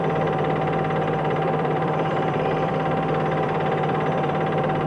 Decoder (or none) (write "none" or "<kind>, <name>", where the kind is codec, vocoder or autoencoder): vocoder, BigVGAN v2